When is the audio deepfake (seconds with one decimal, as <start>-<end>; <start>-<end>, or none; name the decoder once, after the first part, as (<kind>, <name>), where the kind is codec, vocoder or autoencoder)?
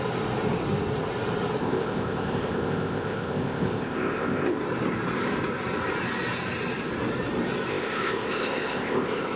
1.6-4.6 (codec, ZipCodec); 7.7-9.4